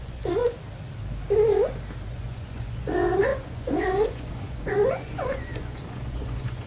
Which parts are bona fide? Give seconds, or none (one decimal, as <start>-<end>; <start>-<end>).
0.4-2.1